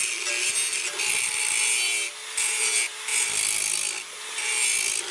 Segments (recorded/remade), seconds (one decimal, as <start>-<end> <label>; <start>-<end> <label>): 0.0-5.1 recorded